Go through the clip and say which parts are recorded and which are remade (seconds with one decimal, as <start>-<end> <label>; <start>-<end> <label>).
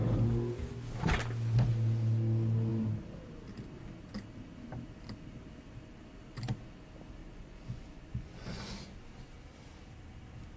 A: 0.0-7.2 recorded; 7.2-8.9 remade; 8.9-10.6 recorded